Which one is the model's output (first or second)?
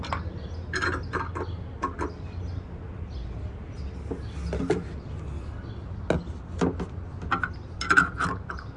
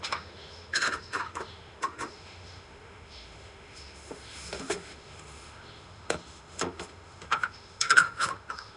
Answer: second